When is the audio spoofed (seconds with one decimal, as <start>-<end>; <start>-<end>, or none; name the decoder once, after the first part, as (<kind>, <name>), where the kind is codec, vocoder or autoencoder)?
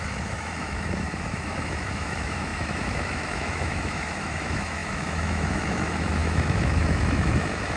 0.0-7.8 (autoencoder, DAC-VAE)